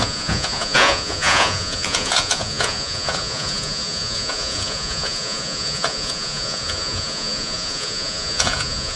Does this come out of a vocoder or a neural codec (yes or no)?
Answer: yes